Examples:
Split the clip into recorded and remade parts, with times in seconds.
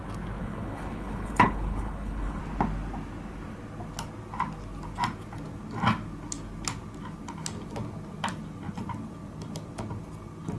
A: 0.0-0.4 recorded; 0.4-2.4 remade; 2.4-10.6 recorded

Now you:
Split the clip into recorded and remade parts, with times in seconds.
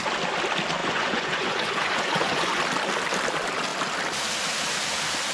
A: 0.0-0.8 recorded; 0.8-2.6 remade; 2.6-5.3 recorded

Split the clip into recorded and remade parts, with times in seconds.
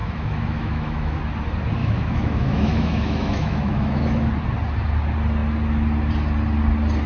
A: 0.0-1.2 remade; 1.2-1.8 recorded; 1.8-4.3 remade; 4.3-7.1 recorded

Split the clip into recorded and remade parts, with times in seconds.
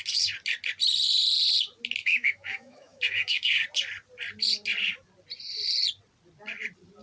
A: 0.0-2.0 recorded; 2.0-3.5 remade; 3.5-7.0 recorded